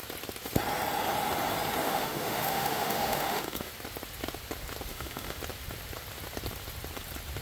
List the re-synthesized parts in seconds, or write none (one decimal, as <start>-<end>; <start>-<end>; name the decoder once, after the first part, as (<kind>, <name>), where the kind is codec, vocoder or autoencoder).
1.8-3.7 (autoencoder, DAC-VAE); 4.9-5.4